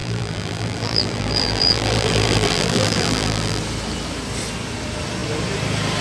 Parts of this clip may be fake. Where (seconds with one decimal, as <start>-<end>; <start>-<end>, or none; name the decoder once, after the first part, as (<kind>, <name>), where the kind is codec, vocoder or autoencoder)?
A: 0.0-3.6 (vocoder, BigVGAN v2)